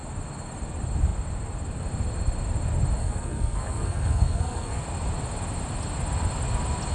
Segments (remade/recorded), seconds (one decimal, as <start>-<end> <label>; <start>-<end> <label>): 0.0-3.0 recorded; 3.0-4.8 remade; 4.8-6.9 recorded

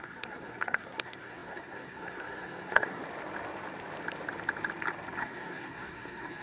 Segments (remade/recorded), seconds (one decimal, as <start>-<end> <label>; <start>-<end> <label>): 0.0-3.0 remade; 3.0-5.2 recorded; 5.2-6.4 remade

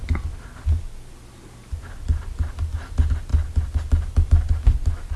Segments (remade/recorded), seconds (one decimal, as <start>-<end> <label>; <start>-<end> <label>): 0.0-5.2 recorded

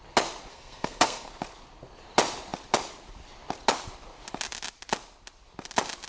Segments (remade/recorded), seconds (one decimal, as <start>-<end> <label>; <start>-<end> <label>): 0.0-0.5 recorded; 0.5-1.3 remade; 1.3-6.1 recorded

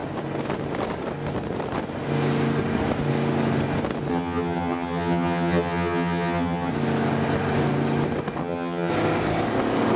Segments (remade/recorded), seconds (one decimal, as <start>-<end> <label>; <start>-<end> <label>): 0.0-4.1 recorded; 4.1-6.7 remade; 6.7-8.4 recorded; 8.4-8.9 remade; 8.9-10.0 recorded

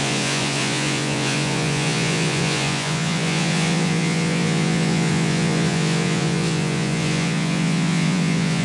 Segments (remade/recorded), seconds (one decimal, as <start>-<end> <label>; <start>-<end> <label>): 0.0-8.6 remade

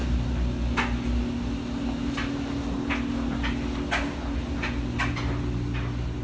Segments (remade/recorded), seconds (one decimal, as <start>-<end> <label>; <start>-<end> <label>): 0.0-6.2 recorded